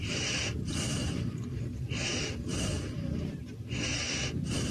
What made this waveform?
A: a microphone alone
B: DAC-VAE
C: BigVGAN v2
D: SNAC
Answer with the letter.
C